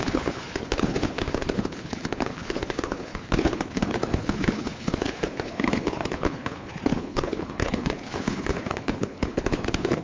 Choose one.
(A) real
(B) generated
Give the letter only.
B